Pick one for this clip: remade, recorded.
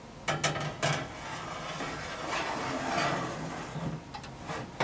recorded